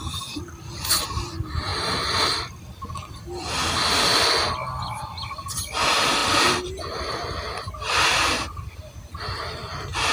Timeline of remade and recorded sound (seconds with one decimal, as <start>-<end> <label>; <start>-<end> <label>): 0.0-10.1 recorded